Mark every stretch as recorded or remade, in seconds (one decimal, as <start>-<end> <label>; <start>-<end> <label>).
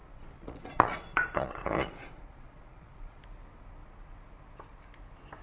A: 0.0-3.2 remade; 3.2-5.4 recorded